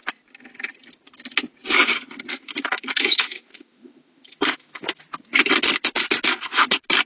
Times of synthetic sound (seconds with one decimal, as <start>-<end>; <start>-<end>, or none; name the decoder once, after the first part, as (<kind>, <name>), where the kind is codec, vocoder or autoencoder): 2.3-5.0 (autoencoder, DAC-VAE)